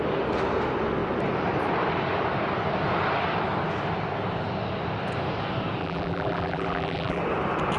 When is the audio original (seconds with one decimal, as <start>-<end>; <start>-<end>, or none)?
0.0-5.8; 7.2-7.8